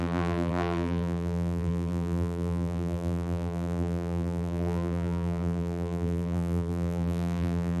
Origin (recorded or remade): remade